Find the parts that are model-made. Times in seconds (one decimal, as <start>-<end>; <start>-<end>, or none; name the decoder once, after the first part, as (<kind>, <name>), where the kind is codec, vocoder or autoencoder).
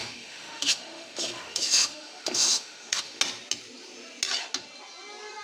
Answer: 0.0-3.2 (autoencoder, DAC-VAE)